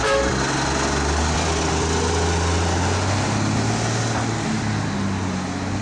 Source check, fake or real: real